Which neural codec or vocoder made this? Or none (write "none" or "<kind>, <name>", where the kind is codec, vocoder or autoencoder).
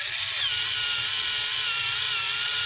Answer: none